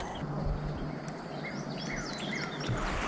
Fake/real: real